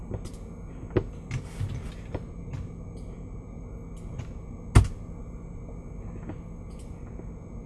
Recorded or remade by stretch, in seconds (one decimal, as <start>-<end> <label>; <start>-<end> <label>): 0.0-7.7 recorded